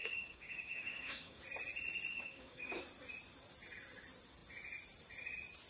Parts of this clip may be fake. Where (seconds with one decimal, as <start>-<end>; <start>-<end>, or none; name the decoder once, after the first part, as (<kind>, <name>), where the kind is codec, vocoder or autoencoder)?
0.0-1.4 (codec, DAC); 2.1-2.8

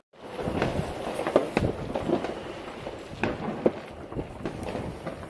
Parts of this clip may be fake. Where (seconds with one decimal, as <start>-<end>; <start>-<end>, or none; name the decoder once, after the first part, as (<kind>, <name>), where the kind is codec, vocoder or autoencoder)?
none

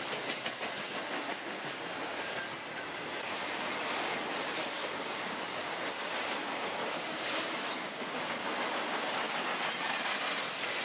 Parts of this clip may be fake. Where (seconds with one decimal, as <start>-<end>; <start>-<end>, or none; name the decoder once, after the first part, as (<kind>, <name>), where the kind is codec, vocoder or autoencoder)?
1.3-2.2 (codec, DAC); 4.8-5.9; 6.8-9.1

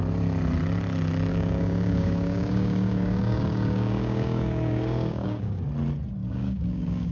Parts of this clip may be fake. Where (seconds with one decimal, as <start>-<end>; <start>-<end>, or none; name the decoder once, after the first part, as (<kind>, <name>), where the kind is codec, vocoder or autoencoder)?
1.3-5.6 (codec, DAC); 6.2-7.1

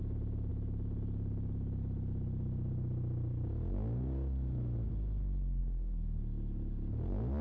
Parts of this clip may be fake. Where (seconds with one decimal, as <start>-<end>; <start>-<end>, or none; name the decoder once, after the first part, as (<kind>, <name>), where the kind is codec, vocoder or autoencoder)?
5.6-6.2 (codec, DAC)

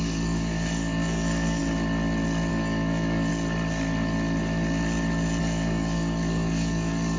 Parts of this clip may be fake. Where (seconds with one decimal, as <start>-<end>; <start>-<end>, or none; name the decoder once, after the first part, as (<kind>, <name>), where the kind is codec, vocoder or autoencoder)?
0.0-1.6 (codec, DAC); 2.5-3.3; 5.4-7.2

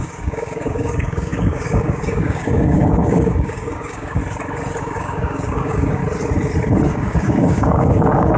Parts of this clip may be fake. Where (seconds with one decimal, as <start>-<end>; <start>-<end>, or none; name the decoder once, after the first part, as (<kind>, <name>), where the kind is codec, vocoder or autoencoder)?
0.0-4.2 (codec, DAC); 4.8-6.0; 6.9-8.4

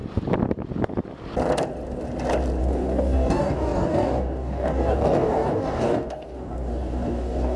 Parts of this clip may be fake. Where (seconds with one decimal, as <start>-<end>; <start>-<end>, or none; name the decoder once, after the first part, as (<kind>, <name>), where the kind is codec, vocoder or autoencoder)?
2.6-7.6 (codec, DAC)